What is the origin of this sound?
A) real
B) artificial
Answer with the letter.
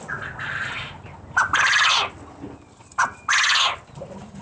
A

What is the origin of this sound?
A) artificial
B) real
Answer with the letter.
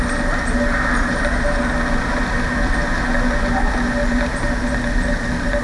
B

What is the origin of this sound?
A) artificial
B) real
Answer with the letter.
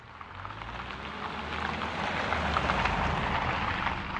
B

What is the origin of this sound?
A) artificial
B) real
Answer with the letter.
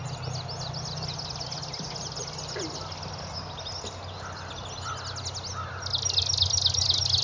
B